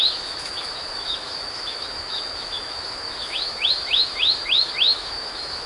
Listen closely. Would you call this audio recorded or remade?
remade